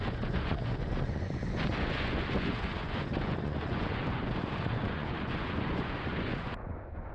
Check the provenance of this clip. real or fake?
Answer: fake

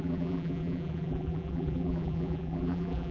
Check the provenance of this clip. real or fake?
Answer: fake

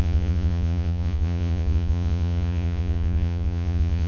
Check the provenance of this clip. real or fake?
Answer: fake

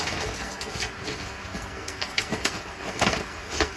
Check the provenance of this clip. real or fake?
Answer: fake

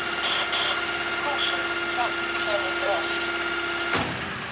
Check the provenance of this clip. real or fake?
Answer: real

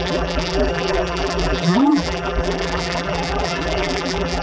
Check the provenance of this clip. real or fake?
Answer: fake